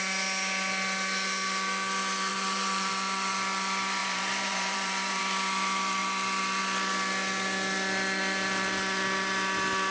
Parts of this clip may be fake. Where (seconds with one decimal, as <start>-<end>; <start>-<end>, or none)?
2.3-2.9; 4.0-5.2